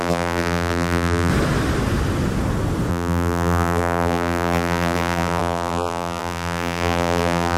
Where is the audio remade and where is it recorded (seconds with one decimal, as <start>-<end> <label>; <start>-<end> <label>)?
0.0-1.3 remade; 1.3-2.9 recorded; 2.9-7.6 remade